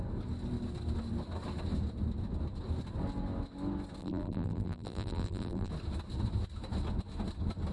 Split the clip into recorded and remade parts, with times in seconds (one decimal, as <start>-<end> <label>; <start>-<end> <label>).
0.0-4.0 recorded; 4.0-5.7 remade; 5.7-7.7 recorded